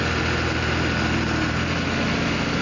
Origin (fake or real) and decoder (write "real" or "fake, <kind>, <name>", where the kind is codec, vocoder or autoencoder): real